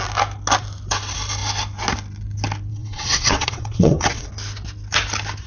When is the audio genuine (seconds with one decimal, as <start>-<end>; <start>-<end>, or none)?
0.0-2.7; 4.3-5.5